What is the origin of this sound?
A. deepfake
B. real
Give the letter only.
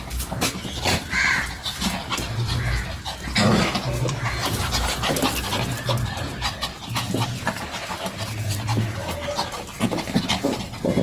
B